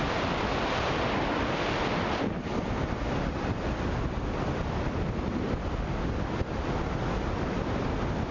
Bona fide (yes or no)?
yes